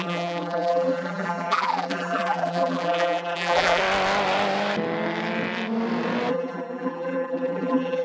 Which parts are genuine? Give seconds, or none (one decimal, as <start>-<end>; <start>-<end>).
3.8-6.3